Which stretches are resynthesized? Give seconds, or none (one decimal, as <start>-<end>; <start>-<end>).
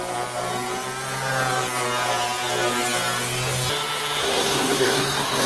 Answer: 4.2-5.5